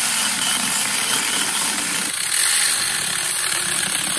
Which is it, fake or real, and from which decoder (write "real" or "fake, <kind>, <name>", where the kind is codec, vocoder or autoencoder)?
real